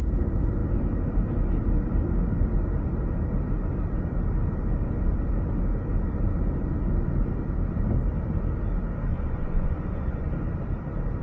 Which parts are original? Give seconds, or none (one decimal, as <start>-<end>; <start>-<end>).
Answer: 0.0-9.1; 10.3-11.2